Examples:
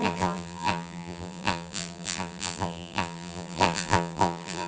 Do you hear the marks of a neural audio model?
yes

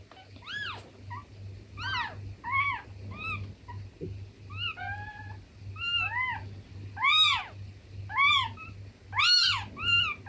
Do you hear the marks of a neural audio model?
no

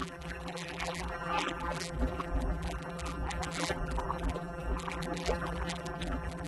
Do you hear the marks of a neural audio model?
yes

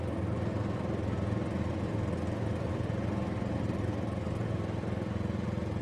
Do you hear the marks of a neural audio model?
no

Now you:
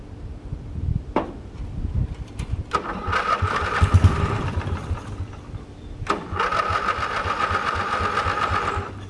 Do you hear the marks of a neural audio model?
yes